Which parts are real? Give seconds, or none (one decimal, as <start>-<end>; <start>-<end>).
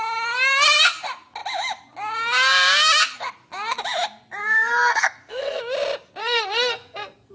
0.0-4.4; 5.6-6.2